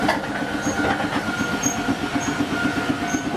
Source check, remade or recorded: recorded